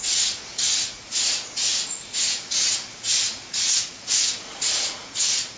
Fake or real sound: fake